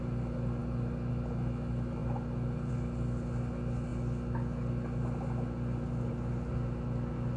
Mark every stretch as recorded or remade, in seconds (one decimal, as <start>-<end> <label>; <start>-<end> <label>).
0.0-7.4 recorded